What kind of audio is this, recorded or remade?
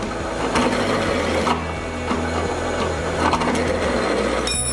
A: recorded